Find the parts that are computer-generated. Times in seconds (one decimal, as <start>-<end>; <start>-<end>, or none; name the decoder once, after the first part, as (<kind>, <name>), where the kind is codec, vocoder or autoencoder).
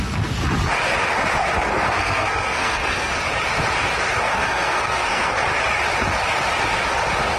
0.0-0.4 (codec, SNAC); 1.7-3.1; 4.2-5.5